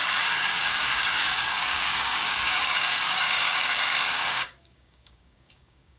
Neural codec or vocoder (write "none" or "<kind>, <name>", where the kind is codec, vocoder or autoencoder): codec, DAC